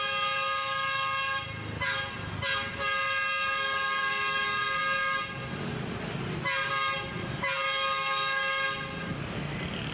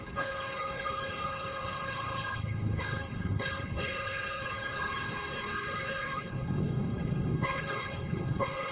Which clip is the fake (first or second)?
second